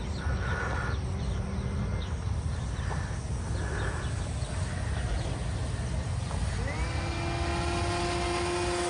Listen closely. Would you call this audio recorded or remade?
recorded